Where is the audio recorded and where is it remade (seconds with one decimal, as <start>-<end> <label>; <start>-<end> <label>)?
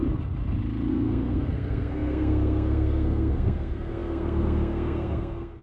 0.0-0.9 recorded; 0.9-5.6 remade